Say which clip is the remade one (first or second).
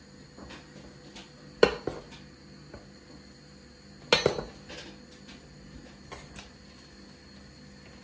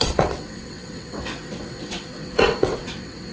second